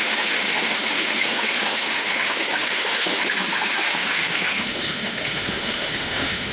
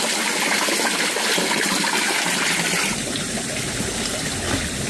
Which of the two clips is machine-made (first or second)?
first